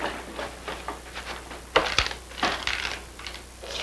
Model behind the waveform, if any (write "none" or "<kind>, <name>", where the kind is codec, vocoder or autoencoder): none